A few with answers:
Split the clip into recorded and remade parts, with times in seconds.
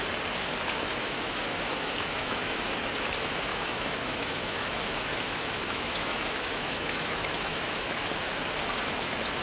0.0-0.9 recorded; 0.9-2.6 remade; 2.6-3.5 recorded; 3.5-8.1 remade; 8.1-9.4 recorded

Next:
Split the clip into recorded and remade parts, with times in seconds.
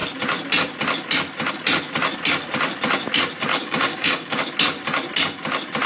0.0-3.5 recorded; 3.5-4.4 remade; 4.4-5.9 recorded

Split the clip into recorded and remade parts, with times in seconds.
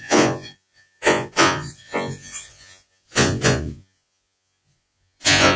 0.0-5.6 remade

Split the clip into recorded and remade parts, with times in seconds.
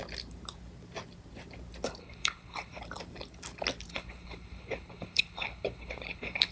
0.0-2.0 recorded; 2.0-2.8 remade; 2.8-3.9 recorded; 3.9-6.5 remade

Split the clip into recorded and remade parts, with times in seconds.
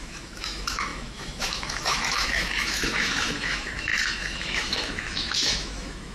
0.0-6.1 remade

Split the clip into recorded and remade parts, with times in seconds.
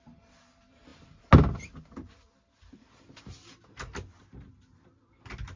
0.0-5.6 recorded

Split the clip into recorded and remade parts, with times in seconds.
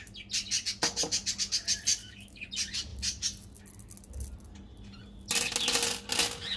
0.0-2.0 recorded; 2.0-2.5 remade; 2.5-6.6 recorded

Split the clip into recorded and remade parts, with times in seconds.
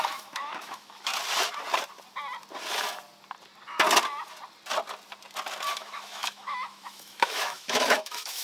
0.0-1.1 remade; 1.1-5.7 recorded; 5.7-8.4 remade